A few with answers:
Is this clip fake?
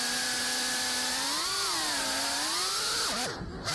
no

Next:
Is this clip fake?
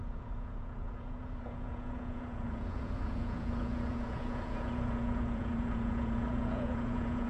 yes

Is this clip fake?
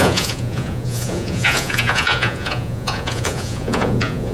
yes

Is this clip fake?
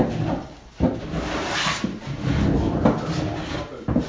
no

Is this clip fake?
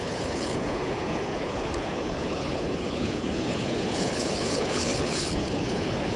yes